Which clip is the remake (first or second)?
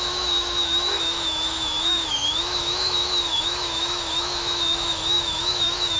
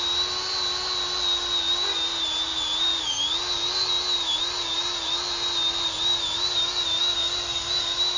first